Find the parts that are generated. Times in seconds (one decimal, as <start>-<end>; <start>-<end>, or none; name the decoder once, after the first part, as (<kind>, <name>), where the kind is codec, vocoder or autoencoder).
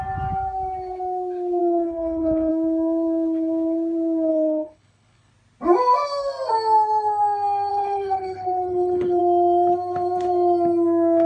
1.6-2.5 (codec, HILCodec); 4.3-5.3; 7.7-9.2